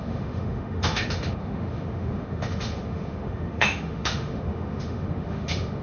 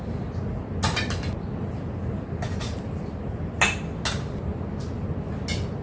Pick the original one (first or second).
second